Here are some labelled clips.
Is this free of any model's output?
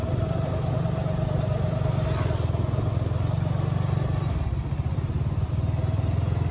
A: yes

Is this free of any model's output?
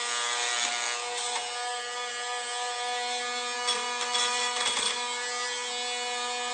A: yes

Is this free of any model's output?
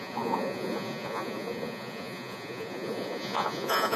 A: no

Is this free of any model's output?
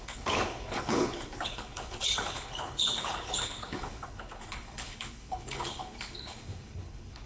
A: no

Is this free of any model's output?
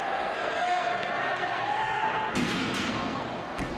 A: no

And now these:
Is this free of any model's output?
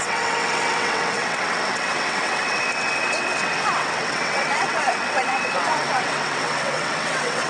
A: no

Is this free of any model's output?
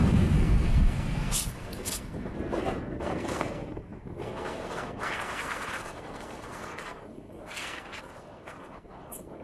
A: no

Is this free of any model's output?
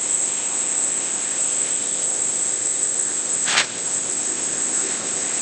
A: no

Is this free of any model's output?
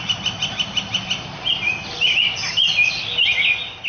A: yes